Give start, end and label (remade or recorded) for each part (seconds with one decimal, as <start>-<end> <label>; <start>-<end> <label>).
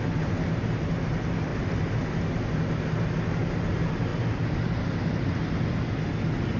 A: 0.0-6.6 recorded